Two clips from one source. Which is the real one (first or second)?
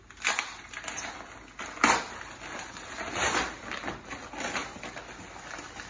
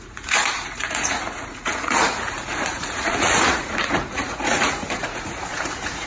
first